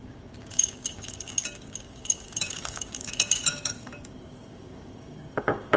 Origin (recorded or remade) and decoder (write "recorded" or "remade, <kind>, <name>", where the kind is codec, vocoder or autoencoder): remade, codec, DAC